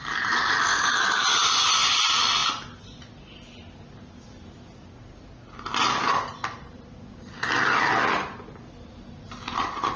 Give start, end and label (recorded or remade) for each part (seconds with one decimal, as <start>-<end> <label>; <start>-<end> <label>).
0.0-10.0 recorded

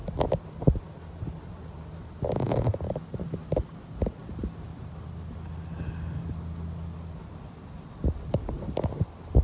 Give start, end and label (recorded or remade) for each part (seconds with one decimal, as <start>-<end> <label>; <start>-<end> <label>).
0.0-9.4 recorded

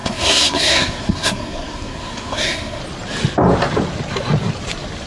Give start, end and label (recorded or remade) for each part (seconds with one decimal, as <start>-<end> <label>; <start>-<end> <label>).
0.0-2.8 remade; 2.8-5.1 recorded

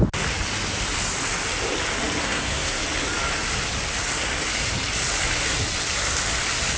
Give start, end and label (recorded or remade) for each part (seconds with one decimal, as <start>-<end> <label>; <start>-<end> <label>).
0.0-2.2 recorded; 2.2-2.8 remade; 2.8-6.8 recorded